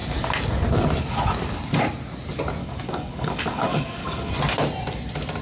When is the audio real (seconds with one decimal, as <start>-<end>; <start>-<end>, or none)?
0.0-2.6; 4.3-5.4